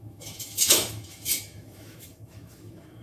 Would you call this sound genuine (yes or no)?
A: no